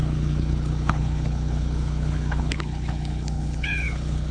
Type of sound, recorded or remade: remade